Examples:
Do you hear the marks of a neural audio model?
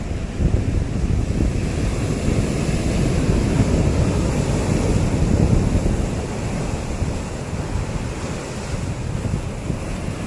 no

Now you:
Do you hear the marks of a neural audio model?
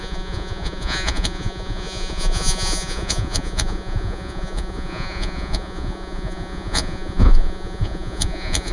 yes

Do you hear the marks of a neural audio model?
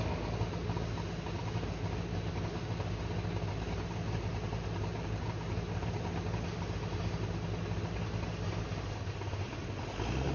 no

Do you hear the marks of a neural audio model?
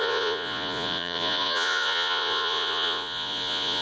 yes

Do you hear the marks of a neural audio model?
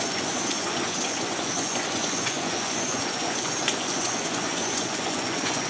yes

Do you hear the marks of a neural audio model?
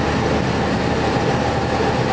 no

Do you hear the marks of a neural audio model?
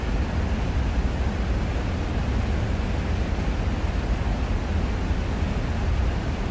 no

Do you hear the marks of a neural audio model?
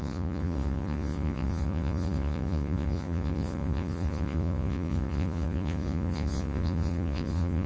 yes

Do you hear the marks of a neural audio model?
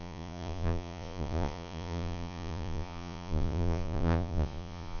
yes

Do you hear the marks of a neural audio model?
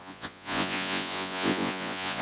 yes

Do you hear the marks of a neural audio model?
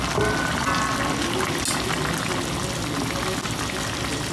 no